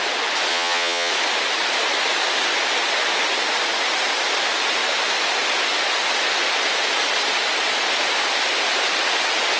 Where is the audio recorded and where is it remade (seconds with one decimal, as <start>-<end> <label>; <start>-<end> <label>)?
0.0-0.5 recorded; 0.5-1.1 remade; 1.1-9.6 recorded